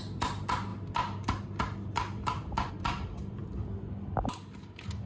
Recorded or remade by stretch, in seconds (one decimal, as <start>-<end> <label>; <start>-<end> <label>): 0.0-5.1 recorded